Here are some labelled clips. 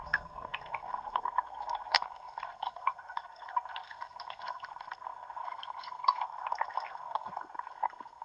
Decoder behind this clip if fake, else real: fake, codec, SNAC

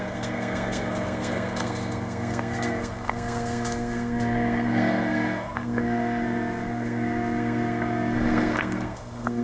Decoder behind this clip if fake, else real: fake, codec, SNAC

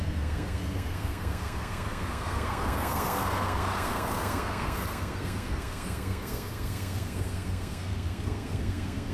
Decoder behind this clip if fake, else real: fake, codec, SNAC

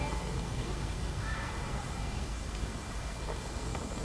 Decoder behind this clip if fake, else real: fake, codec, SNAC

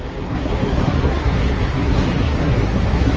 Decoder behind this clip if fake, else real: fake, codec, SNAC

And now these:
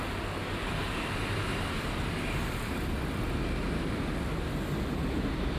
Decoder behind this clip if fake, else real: real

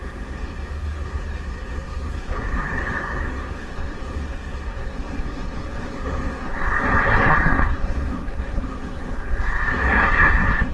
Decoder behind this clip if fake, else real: fake, codec, SNAC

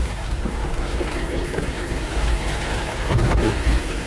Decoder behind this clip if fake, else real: fake, codec, SNAC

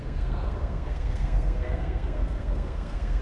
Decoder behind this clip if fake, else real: fake, codec, SNAC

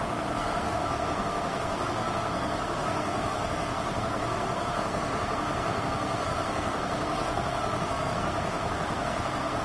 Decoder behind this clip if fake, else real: fake, codec, SNAC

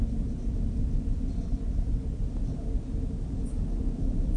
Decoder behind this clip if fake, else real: real